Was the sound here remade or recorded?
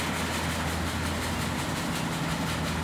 recorded